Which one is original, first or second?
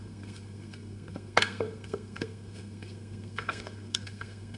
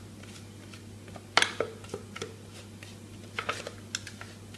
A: second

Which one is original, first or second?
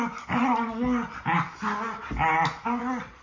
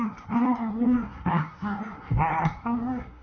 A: first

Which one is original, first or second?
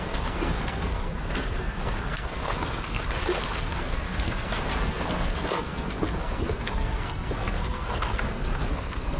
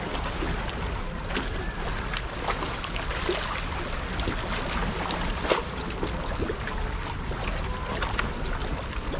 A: second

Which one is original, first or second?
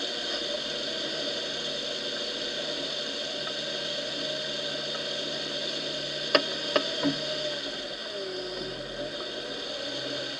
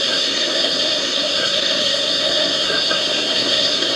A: first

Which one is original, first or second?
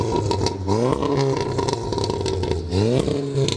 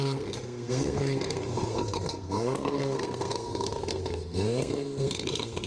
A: first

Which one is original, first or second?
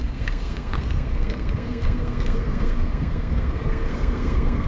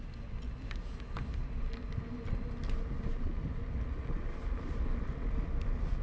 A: second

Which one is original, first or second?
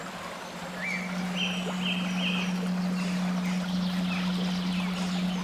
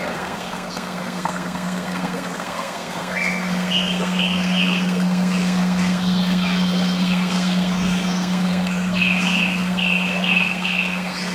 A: first